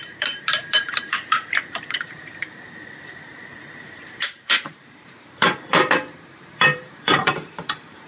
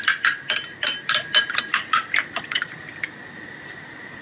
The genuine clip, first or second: second